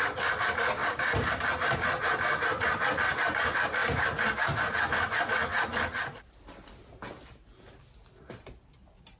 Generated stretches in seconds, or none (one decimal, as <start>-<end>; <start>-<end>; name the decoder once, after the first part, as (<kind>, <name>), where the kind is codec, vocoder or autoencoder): 0.8-1.4 (codec, DAC)